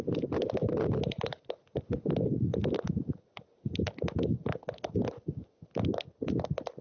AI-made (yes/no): no